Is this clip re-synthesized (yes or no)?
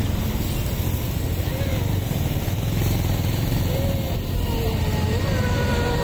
no